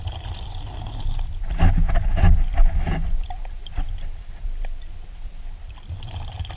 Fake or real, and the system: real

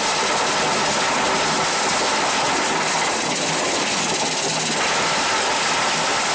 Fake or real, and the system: real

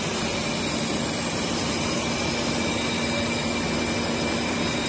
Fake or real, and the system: real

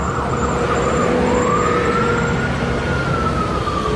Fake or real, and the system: real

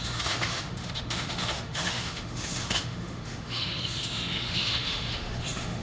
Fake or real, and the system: fake, autoencoder, DAC-VAE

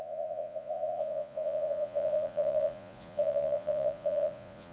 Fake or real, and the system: fake, vocoder, Vocos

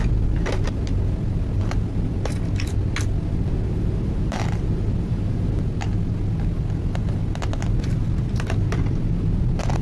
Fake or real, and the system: real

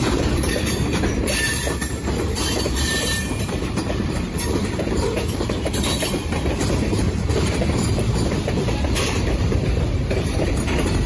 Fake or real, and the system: fake, vocoder, BigVGAN v2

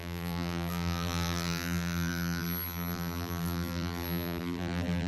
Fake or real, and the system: fake, vocoder, BigVGAN v2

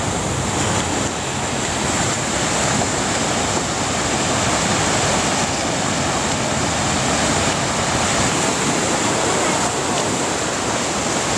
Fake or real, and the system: real